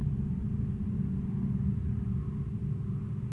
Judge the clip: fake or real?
real